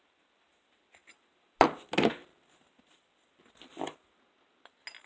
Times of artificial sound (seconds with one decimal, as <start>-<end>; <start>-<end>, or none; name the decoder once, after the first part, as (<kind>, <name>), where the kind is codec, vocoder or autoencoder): none